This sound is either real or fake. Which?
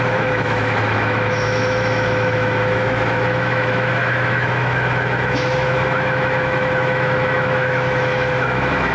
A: fake